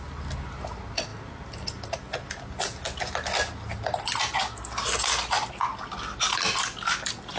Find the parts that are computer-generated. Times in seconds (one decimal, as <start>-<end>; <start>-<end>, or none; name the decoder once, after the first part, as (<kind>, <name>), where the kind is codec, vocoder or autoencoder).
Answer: none